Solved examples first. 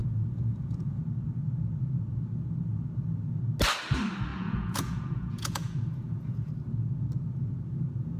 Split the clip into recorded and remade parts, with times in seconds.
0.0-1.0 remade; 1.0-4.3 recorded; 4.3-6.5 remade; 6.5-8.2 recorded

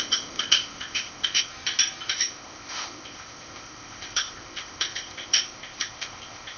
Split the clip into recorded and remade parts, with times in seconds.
0.0-1.5 remade; 1.5-2.1 recorded; 2.1-6.6 remade